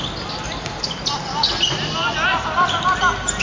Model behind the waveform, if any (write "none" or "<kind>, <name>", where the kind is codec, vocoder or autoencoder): none